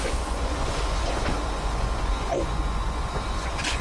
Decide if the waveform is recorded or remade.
remade